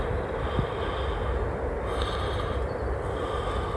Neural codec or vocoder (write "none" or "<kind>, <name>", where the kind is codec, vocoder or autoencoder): none